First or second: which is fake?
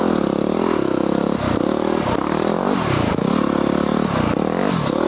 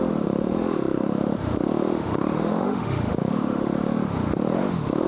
second